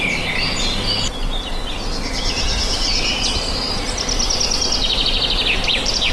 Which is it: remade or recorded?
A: recorded